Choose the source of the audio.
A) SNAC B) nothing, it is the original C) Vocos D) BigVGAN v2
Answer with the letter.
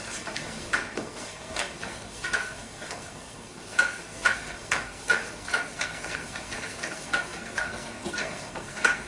A